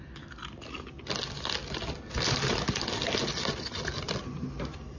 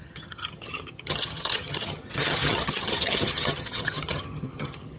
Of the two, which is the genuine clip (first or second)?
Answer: first